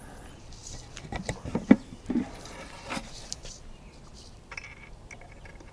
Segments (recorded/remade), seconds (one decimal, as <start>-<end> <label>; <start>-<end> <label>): 0.0-5.7 recorded